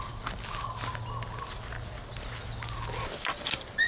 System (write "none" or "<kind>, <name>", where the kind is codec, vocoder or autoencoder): none